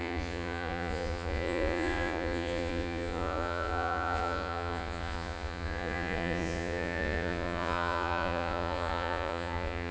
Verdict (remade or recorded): remade